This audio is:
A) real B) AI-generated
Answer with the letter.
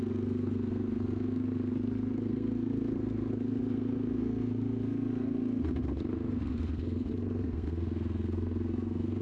B